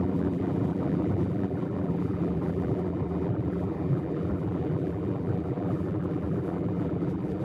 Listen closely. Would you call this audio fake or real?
fake